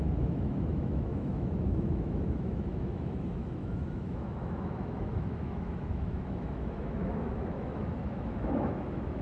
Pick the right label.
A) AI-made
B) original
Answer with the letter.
A